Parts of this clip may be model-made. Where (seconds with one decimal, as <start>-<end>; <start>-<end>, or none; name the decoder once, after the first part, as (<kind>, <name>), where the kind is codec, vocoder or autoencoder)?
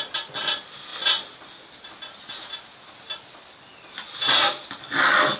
none